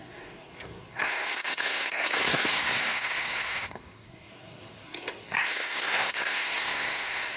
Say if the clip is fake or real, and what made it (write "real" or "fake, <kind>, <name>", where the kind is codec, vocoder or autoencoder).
fake, codec, SNAC